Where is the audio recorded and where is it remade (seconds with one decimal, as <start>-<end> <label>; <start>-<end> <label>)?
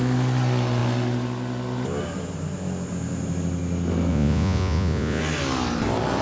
0.0-4.1 recorded; 4.1-5.2 remade; 5.2-6.2 recorded